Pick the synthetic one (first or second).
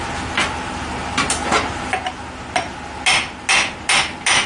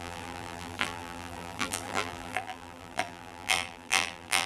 second